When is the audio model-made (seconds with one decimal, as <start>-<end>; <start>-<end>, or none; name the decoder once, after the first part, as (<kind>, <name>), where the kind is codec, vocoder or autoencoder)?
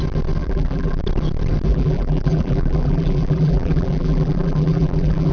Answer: 0.4-1.0 (vocoder, BigVGAN v2); 1.7-5.3